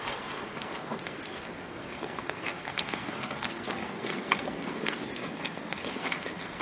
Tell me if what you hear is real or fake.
fake